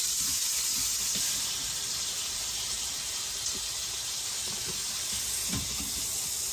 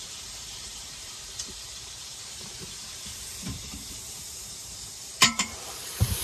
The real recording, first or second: first